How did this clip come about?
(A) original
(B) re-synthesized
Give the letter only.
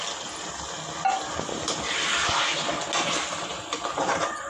A